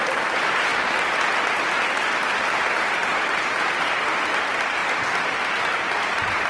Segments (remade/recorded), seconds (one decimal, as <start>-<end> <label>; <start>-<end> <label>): 0.0-0.7 remade; 0.7-1.6 recorded; 1.6-6.5 remade